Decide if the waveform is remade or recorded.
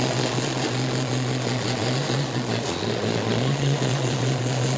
remade